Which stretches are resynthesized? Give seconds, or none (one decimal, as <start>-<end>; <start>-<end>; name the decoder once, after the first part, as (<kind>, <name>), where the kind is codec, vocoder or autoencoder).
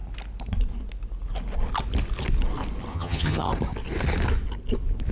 2.9-3.5 (vocoder, HiFi-GAN)